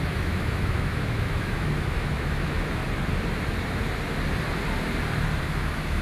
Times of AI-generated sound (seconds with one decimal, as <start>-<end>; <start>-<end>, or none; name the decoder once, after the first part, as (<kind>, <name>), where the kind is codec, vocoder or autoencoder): 0.0-2.8 (autoencoder, DAC-VAE); 5.4-6.0